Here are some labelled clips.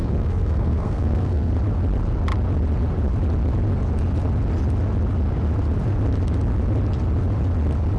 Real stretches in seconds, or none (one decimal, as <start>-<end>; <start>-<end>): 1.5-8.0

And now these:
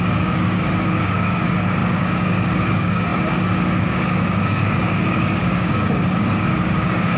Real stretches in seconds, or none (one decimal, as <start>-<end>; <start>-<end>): none

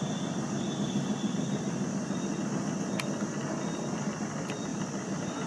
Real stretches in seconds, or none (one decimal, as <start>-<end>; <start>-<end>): 0.0-5.5

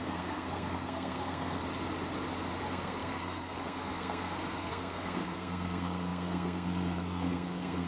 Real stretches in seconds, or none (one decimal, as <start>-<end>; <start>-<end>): 1.6-2.6